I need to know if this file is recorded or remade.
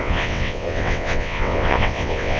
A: remade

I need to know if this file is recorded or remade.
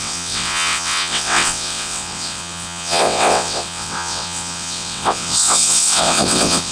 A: remade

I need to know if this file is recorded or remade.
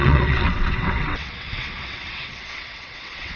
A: remade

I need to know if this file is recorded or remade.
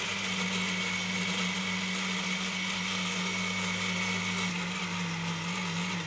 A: recorded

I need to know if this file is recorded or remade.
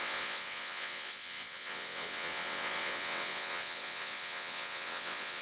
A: remade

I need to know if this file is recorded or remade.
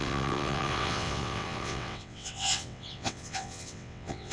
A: remade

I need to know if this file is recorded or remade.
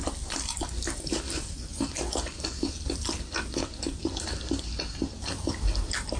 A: recorded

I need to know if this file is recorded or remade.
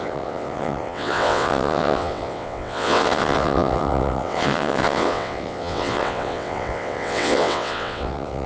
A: remade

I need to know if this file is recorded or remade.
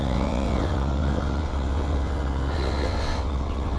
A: remade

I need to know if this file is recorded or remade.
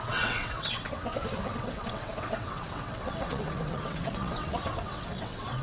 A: remade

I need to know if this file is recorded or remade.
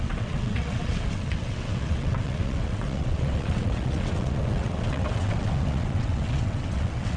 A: remade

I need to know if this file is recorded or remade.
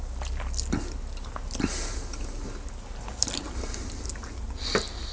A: recorded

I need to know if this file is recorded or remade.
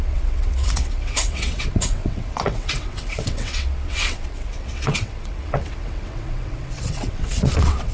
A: remade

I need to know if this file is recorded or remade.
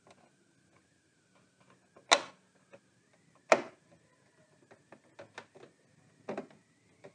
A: recorded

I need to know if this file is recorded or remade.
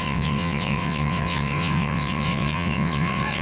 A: remade